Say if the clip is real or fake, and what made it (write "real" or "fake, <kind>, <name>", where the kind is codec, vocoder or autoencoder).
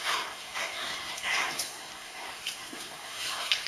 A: fake, codec, SNAC